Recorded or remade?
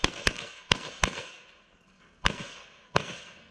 remade